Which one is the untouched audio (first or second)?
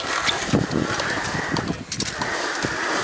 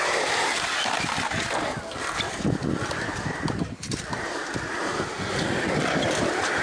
first